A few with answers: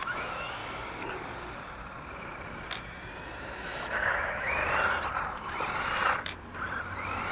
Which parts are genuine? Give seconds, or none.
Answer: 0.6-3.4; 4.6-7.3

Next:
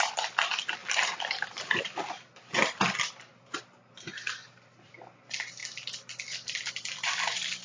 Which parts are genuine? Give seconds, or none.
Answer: 5.6-6.7

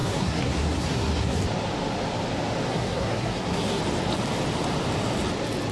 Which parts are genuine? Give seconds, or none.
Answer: 1.4-2.7; 3.8-5.7

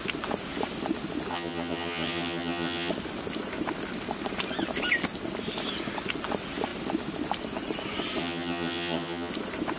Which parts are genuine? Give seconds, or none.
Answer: 0.0-1.3; 2.9-8.2; 9.3-9.8

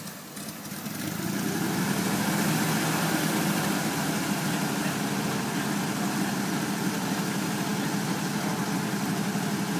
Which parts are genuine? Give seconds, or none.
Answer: 0.0-9.8

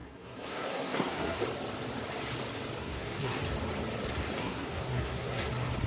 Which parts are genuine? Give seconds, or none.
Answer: 1.4-2.8; 3.4-4.4; 5.5-5.9

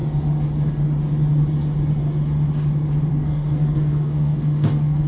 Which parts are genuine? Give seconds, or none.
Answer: 0.0-3.1

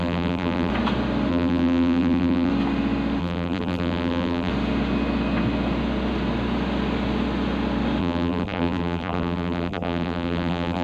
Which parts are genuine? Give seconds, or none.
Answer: 0.7-1.3; 2.5-3.2; 4.5-8.0